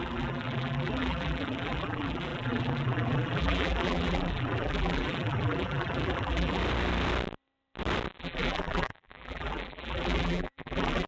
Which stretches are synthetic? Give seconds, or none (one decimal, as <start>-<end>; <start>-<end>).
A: 0.0-6.6; 8.2-11.1